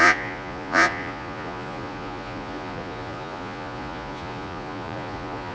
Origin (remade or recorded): remade